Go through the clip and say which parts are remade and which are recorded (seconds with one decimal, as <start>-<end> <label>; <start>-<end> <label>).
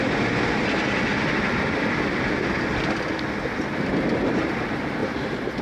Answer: 0.0-1.1 remade; 1.1-4.5 recorded; 4.5-5.0 remade; 5.0-5.6 recorded